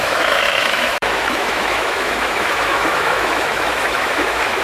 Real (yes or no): no